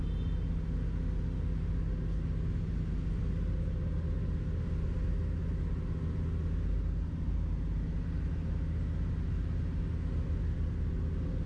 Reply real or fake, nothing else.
real